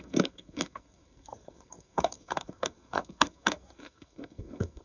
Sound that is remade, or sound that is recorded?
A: remade